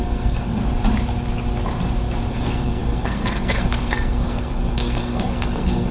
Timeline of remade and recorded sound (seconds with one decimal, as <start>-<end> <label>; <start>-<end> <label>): 0.0-0.6 remade; 0.6-2.3 recorded; 2.3-5.9 remade